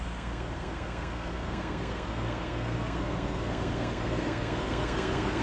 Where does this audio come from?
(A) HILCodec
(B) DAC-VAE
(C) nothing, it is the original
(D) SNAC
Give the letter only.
D